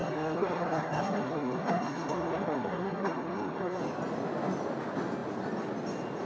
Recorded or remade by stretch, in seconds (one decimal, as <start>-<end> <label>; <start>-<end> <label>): 0.0-3.8 remade; 3.8-6.3 recorded